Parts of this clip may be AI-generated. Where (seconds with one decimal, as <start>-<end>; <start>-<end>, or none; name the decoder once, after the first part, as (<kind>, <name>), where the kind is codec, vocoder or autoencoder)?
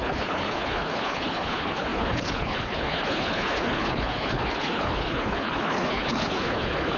0.0-7.0 (codec, HILCodec)